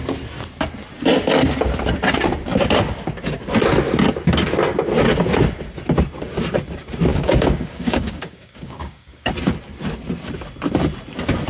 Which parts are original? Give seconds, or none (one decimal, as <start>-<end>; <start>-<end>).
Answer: 0.0-7.1; 9.3-11.5